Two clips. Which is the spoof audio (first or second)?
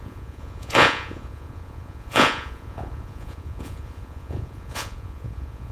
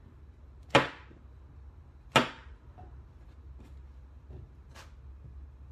first